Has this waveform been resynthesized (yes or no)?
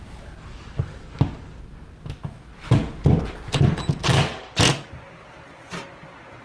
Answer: no